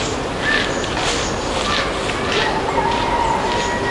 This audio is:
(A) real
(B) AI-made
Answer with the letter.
A